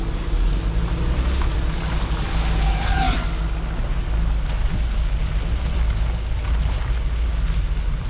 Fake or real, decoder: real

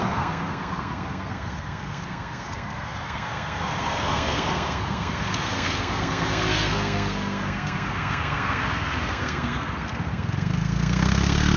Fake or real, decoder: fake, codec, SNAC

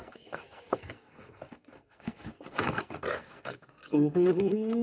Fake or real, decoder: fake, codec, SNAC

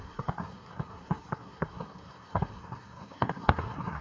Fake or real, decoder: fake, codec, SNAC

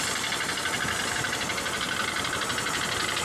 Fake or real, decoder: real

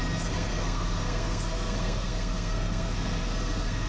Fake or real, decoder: fake, codec, SNAC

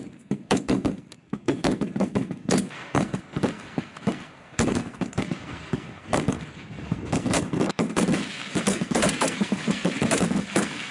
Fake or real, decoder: fake, codec, SNAC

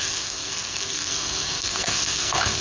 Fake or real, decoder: fake, codec, SNAC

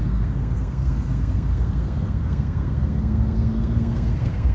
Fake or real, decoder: fake, codec, SNAC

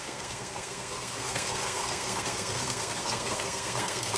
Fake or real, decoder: fake, codec, SNAC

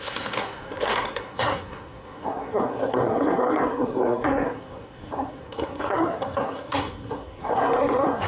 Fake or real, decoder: fake, codec, SNAC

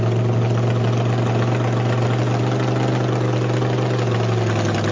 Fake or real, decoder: real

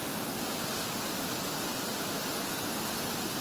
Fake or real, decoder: real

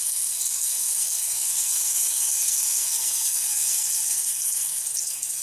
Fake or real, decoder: fake, codec, SNAC